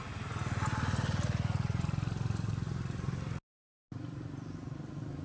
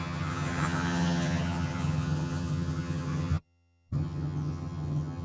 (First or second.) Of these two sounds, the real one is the first